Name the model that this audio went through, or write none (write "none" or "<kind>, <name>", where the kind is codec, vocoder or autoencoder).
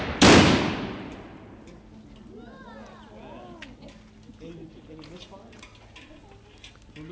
none